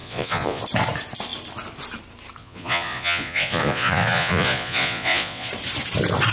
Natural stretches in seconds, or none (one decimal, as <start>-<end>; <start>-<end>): 0.6-2.4; 5.5-6.3